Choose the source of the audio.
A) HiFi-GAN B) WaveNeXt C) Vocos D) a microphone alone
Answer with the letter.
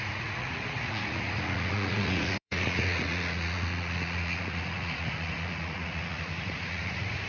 C